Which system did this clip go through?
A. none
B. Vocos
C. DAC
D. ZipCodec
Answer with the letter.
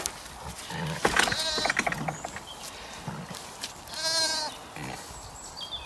A